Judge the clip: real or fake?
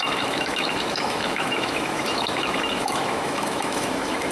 fake